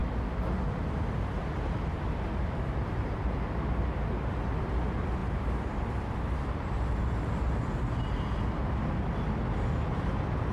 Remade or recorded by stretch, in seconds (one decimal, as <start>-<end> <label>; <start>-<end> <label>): 0.0-5.2 recorded; 5.2-7.4 remade; 7.4-10.5 recorded